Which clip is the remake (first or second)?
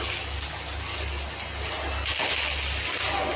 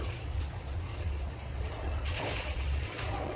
second